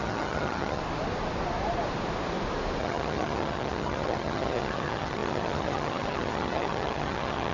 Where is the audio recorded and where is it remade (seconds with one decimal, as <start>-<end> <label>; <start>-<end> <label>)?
0.0-0.8 remade; 0.8-2.8 recorded; 2.8-7.5 remade